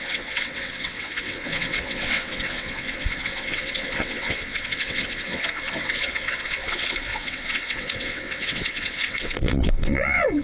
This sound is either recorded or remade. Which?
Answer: remade